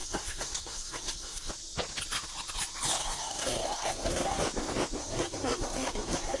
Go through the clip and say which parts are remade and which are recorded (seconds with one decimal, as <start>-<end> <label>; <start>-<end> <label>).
0.0-1.5 remade; 1.5-3.0 recorded; 3.0-4.4 remade; 4.4-5.0 recorded; 5.0-6.4 remade